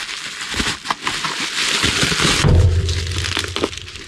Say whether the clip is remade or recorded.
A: recorded